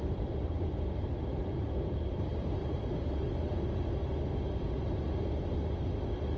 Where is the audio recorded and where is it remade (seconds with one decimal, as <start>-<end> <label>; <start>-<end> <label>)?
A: 0.0-1.7 remade; 1.7-2.3 recorded; 2.3-3.4 remade; 3.4-6.4 recorded